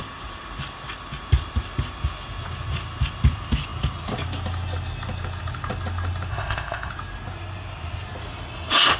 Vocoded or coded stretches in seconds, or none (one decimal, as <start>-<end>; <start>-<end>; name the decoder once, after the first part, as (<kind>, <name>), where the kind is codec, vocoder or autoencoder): 6.3-6.9 (codec, ZipCodec)